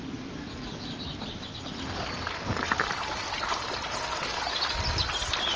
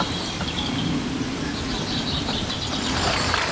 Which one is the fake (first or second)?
second